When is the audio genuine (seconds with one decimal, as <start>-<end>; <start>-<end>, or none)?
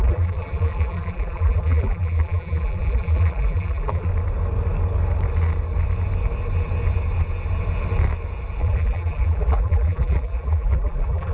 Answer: 4.1-8.6